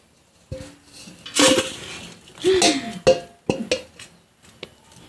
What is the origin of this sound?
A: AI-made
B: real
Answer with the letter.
B